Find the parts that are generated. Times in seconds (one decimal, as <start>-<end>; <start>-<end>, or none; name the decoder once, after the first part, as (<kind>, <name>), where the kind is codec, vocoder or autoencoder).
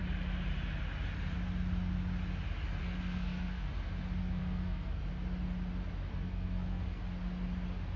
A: 2.8-3.7 (codec, SNAC); 4.2-5.0; 6.1-7.0